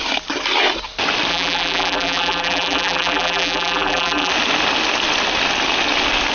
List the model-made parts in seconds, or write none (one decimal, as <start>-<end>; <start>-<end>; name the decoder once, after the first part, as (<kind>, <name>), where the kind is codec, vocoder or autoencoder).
1.3-4.3 (vocoder, BigVGAN v2)